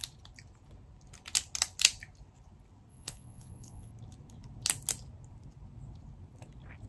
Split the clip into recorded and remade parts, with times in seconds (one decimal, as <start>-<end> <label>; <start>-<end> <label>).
0.0-2.9 recorded; 2.9-3.9 remade; 3.9-6.9 recorded